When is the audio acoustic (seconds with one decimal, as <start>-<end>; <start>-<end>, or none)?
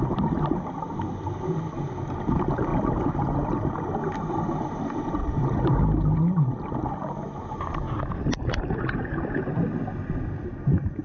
0.0-11.0